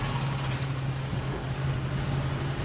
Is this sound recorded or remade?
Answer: recorded